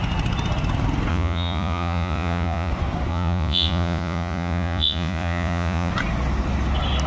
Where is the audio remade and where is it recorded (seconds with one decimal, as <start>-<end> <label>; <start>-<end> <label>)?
0.0-1.1 recorded; 1.1-2.7 remade; 2.7-3.1 recorded; 3.1-5.9 remade; 5.9-7.1 recorded